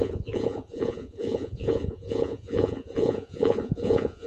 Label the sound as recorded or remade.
remade